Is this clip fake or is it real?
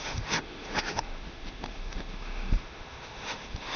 fake